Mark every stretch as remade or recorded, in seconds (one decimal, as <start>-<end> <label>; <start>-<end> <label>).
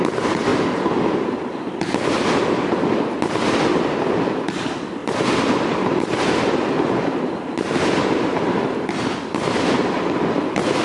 0.0-5.0 recorded; 5.0-9.6 remade; 9.6-10.8 recorded